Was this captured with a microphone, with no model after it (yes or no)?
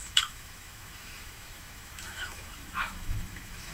no